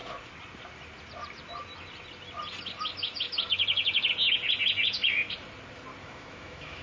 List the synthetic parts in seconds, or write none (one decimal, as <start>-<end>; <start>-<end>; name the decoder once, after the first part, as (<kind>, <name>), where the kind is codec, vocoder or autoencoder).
6.0-6.8 (autoencoder, DAC-VAE)